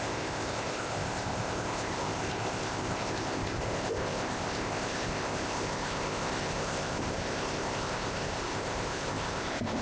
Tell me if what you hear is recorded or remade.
remade